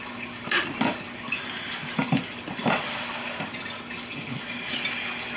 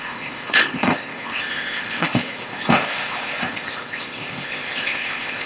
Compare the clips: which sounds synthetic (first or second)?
second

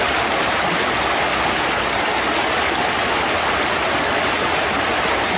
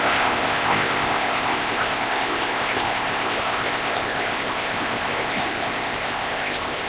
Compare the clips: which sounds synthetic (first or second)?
second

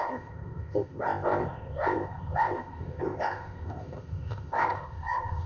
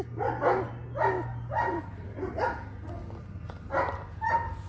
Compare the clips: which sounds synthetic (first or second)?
first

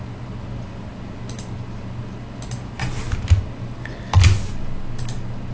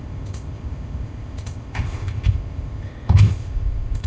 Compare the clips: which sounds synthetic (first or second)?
second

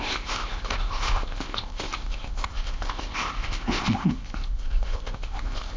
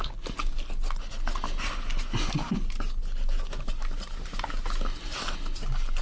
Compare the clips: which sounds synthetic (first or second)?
first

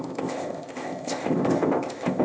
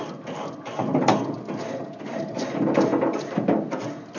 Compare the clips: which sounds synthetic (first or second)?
first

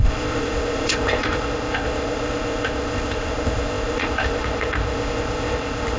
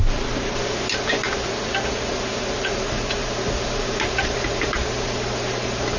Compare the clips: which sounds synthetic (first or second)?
first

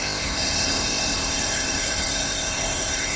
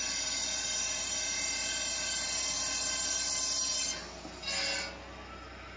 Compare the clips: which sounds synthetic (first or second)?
first